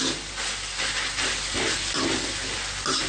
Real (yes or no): yes